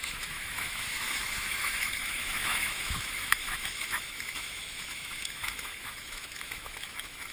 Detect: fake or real fake